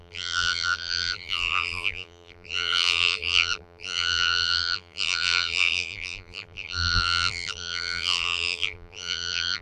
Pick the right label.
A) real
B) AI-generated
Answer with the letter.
B